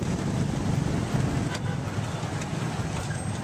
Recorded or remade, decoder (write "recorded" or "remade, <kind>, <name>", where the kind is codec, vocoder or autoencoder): recorded